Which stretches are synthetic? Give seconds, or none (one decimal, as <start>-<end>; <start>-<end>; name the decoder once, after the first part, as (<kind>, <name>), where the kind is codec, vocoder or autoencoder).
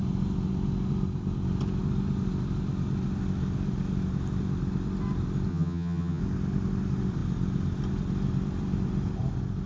5.5-6.2 (vocoder, HiFi-GAN)